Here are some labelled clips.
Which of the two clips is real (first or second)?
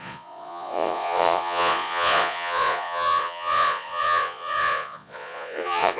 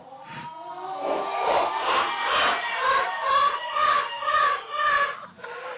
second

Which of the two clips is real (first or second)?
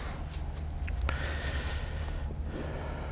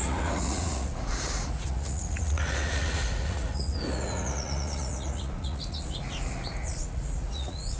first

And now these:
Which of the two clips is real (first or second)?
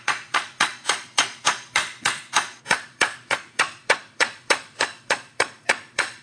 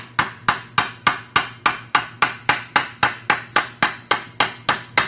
second